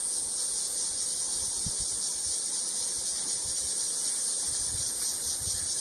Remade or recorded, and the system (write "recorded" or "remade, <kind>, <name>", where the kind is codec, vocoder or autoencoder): recorded